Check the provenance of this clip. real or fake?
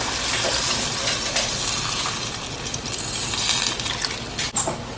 real